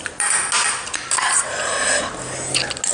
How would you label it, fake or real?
real